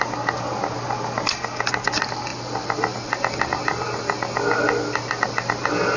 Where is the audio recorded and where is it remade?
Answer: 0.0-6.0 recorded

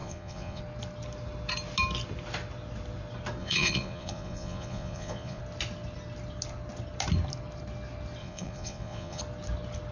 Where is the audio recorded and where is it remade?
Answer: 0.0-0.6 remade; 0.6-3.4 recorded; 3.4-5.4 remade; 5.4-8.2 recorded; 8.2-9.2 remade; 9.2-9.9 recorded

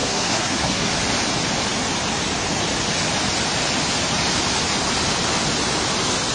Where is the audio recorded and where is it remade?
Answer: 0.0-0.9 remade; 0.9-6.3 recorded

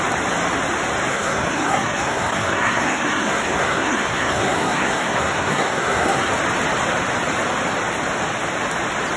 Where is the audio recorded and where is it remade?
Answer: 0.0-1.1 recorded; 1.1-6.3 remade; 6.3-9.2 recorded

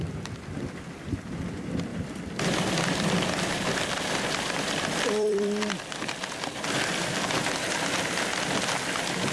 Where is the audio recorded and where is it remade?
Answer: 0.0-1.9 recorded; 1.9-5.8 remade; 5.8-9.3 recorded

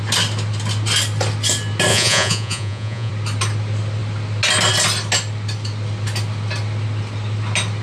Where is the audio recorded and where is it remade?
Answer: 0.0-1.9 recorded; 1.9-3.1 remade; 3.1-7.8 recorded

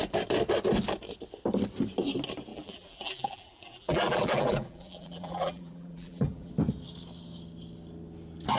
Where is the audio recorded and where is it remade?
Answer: 0.0-2.5 recorded; 2.5-6.5 remade; 6.5-8.6 recorded

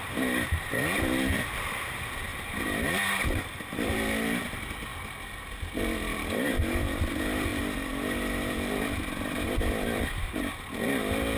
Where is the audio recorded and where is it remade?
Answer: 0.0-2.3 recorded; 2.3-3.9 remade; 3.9-11.4 recorded